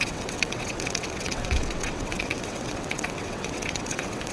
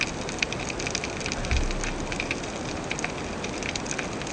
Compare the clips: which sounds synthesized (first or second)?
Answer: first